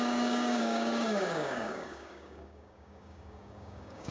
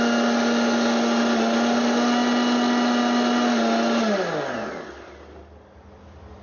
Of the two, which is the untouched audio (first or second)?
second